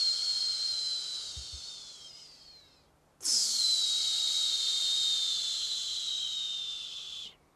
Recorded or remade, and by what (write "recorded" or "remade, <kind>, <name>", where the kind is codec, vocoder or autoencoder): recorded